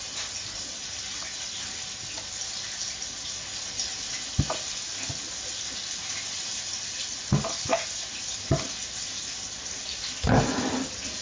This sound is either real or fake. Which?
real